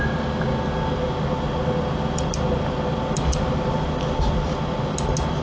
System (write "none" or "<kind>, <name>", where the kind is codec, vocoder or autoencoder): none